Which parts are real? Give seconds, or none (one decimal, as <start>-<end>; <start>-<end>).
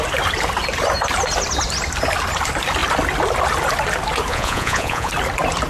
0.0-4.3; 5.1-5.7